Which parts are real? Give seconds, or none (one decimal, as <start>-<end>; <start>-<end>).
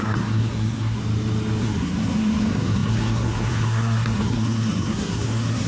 1.0-1.6